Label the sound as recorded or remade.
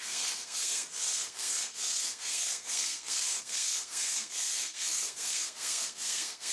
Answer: remade